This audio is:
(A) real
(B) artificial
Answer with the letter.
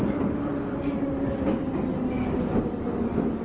A